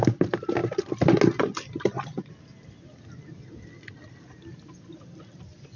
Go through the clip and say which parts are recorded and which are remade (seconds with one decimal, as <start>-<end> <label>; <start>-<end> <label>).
0.0-5.8 recorded